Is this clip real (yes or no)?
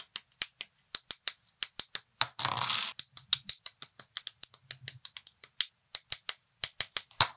yes